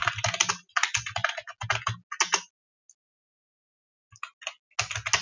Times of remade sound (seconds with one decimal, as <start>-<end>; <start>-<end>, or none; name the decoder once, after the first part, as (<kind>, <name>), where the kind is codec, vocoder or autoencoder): none